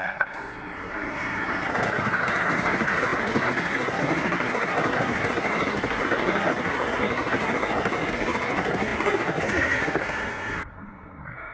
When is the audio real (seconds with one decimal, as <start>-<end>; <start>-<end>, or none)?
none